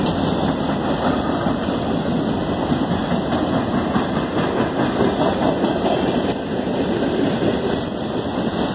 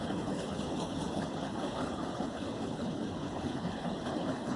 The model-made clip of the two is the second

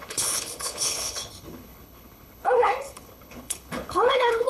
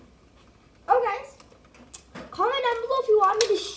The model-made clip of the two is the first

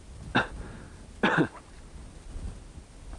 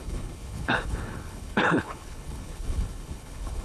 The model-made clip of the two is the second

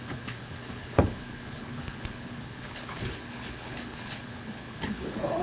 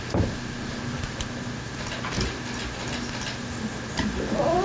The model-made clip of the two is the first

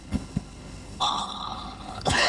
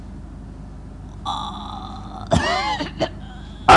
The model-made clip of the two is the first